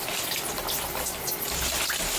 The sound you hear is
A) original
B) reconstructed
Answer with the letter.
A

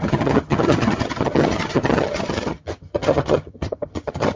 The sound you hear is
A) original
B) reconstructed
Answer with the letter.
B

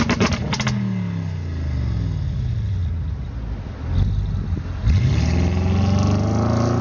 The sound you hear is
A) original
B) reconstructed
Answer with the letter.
A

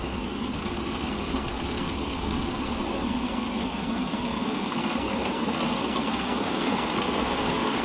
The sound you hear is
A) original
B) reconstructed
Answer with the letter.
B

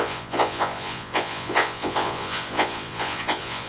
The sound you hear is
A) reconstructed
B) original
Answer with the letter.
A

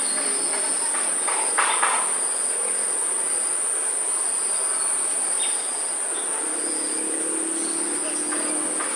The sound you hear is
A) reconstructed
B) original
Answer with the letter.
B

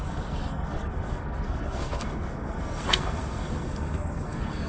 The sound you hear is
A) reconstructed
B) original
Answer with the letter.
A